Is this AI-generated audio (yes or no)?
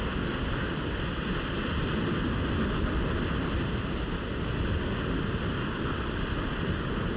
no